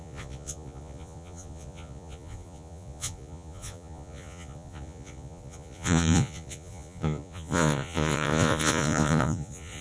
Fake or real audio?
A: fake